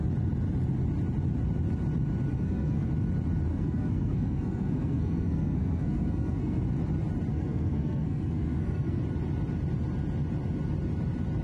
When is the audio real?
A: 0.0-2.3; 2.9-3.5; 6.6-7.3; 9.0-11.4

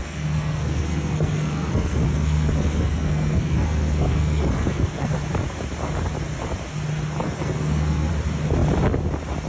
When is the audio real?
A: 5.2-7.2; 8.1-9.5

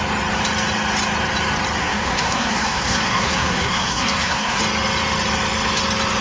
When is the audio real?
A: 0.0-1.8; 4.6-6.2